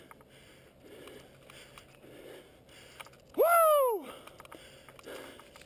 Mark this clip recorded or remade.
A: recorded